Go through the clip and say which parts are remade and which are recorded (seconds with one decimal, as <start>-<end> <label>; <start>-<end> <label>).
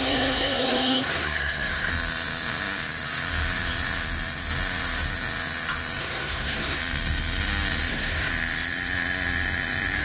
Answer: 0.0-1.9 remade; 1.9-6.0 recorded; 6.0-6.8 remade; 6.8-7.9 recorded; 7.9-8.3 remade; 8.3-10.0 recorded